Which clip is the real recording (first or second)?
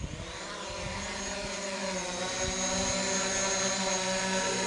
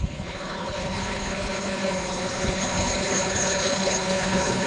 first